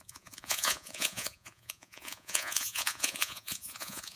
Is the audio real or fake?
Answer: fake